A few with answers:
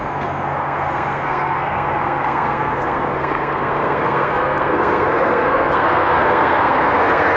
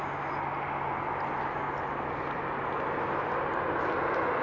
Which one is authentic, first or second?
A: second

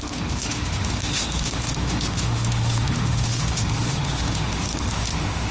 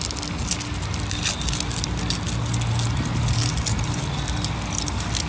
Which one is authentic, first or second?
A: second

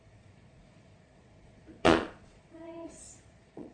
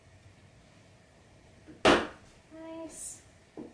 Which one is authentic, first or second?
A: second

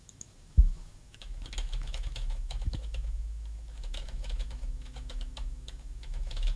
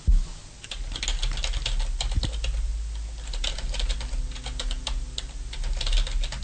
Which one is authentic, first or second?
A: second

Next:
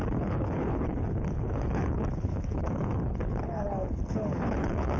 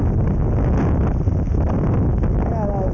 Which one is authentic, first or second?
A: second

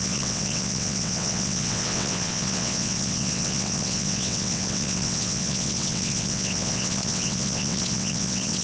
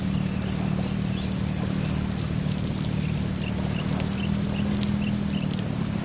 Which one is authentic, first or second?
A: second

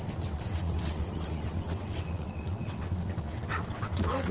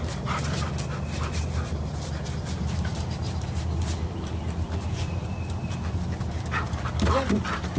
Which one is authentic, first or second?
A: second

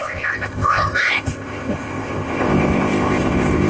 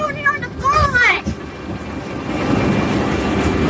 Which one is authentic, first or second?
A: second